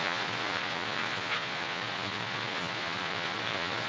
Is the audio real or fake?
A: fake